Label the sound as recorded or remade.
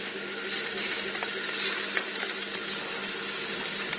recorded